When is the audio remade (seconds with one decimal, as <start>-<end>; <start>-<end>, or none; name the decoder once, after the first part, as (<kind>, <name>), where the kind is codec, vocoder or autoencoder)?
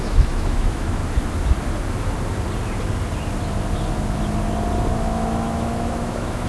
0.0-1.0 (autoencoder, DAC-VAE); 4.9-6.5